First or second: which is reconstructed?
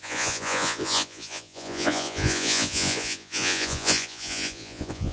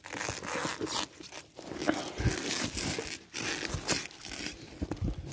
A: first